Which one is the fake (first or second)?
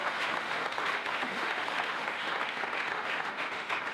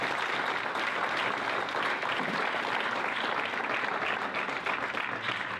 first